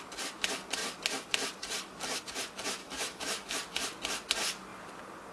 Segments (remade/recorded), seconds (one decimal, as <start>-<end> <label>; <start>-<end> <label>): 0.0-2.8 recorded; 2.8-3.5 remade; 3.5-5.3 recorded